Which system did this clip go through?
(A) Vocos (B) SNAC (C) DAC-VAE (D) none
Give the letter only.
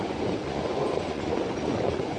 A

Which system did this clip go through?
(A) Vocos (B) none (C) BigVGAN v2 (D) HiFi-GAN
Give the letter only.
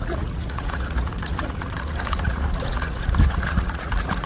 A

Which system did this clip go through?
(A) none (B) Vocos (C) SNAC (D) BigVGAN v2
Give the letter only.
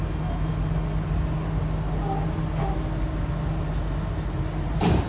A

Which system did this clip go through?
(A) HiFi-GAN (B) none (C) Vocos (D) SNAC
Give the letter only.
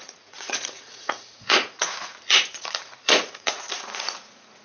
C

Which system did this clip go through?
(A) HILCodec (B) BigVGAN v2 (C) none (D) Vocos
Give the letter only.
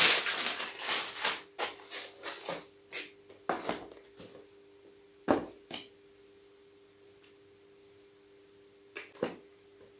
C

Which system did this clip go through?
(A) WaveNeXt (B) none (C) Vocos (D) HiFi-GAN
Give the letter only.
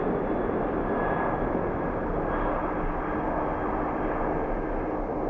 B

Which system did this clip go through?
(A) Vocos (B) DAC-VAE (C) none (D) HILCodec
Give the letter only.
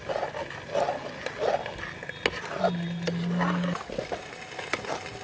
C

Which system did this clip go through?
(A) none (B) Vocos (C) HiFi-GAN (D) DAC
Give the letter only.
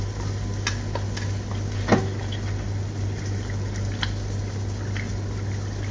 A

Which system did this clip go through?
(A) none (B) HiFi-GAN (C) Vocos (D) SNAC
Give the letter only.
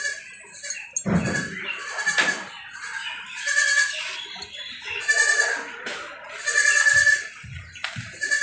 A